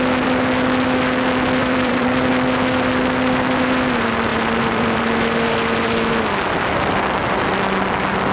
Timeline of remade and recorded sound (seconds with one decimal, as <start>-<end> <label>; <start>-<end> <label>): 0.0-1.6 recorded; 1.6-2.3 remade; 2.3-4.3 recorded; 4.3-5.0 remade; 5.0-8.3 recorded